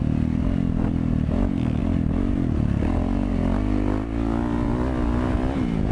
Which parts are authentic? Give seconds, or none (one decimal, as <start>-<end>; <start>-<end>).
0.0-5.9